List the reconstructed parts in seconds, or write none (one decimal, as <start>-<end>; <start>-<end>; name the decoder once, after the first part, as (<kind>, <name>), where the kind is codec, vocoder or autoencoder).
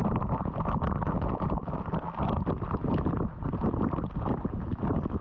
none